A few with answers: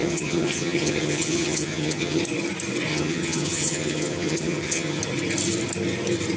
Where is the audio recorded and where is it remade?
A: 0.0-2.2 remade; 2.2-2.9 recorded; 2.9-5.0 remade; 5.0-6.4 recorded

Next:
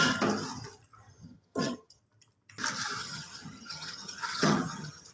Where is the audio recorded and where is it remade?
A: 0.0-1.1 recorded; 1.1-2.0 remade; 2.0-3.0 recorded; 3.0-5.1 remade

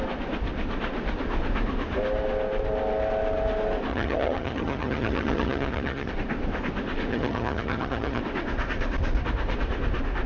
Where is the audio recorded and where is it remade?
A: 0.0-3.9 recorded; 3.9-6.1 remade; 6.1-7.1 recorded; 7.1-8.2 remade; 8.2-10.3 recorded